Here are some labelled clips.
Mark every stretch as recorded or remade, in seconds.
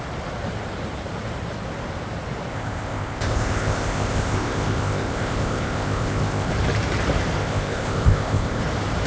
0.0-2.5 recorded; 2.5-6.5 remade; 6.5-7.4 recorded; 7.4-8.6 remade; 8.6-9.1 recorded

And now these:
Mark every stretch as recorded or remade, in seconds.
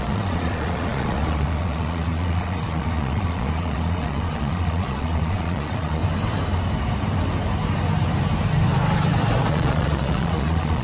0.0-6.0 remade; 6.0-9.5 recorded; 9.5-10.8 remade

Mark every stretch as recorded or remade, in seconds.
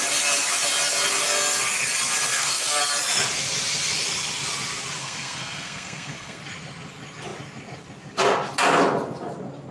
0.0-2.3 recorded; 2.3-2.8 remade; 2.8-5.0 recorded; 5.0-6.4 remade; 6.4-9.7 recorded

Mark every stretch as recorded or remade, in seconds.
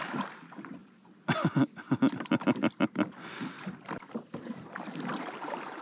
0.0-5.8 recorded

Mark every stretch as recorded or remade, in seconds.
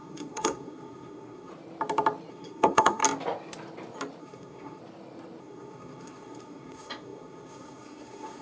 0.0-1.5 remade; 1.5-2.3 recorded; 2.3-3.0 remade; 3.0-4.2 recorded; 4.2-4.8 remade; 4.8-5.4 recorded; 5.4-8.4 remade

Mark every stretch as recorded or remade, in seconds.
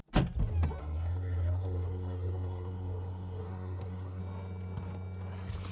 0.0-0.8 recorded; 0.8-4.2 remade; 4.2-5.7 recorded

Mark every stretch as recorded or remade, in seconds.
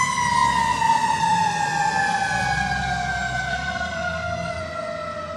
0.0-3.5 recorded; 3.5-4.6 remade; 4.6-5.4 recorded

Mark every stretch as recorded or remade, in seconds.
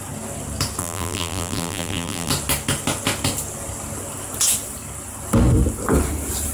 0.0-0.8 recorded; 0.8-2.3 remade; 2.3-6.5 recorded